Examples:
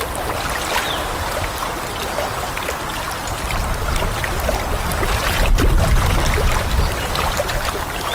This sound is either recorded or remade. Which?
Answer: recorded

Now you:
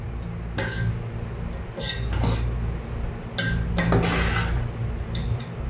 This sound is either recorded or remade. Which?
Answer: recorded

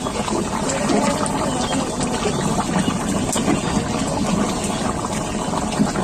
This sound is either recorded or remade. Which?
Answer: recorded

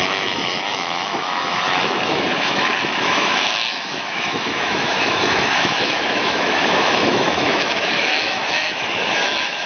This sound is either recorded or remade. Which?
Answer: remade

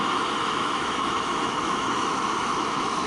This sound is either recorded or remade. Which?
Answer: remade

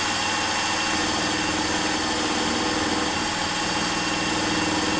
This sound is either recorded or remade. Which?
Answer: recorded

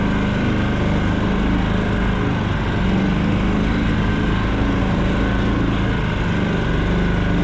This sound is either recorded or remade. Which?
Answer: recorded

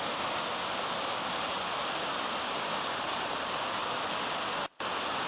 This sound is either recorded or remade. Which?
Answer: recorded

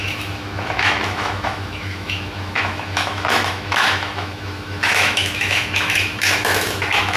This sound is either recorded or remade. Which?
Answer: remade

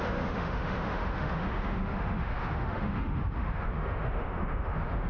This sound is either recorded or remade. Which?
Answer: remade